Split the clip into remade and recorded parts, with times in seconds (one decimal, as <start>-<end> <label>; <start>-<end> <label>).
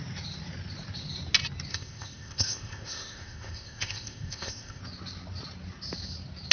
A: 0.0-1.7 recorded; 1.7-4.8 remade; 4.8-6.5 recorded